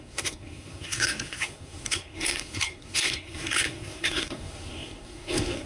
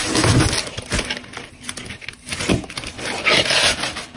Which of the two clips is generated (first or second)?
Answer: first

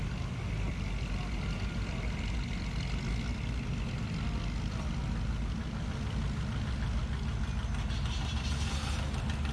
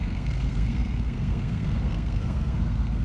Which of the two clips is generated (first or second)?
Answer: second